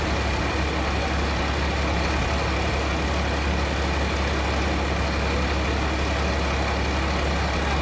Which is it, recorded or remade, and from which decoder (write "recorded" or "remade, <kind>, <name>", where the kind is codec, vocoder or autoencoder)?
recorded